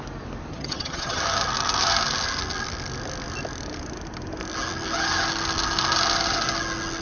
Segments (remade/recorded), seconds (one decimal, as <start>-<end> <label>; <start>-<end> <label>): 0.0-0.5 recorded; 0.5-1.2 remade; 1.2-7.0 recorded